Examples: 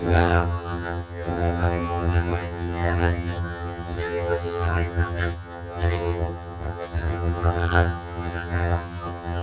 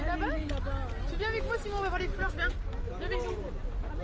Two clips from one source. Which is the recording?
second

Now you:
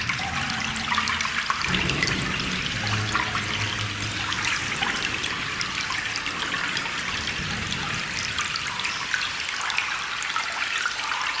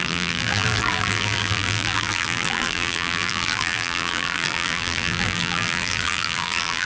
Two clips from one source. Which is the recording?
first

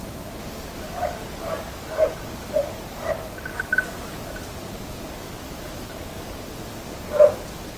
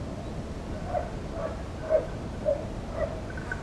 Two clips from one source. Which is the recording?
second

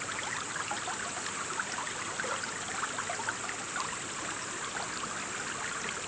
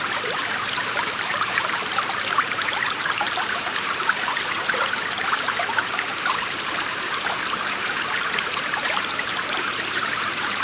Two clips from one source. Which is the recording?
first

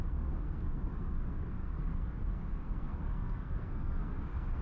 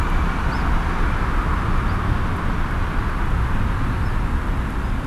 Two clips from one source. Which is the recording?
second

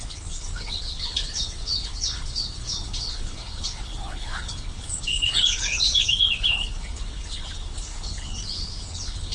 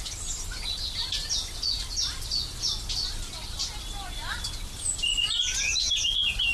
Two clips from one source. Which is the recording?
second